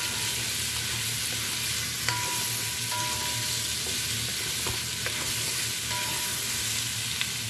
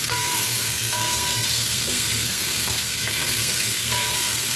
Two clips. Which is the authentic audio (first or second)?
first